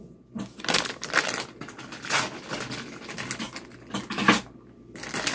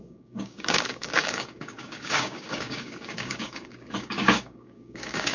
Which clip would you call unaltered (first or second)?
first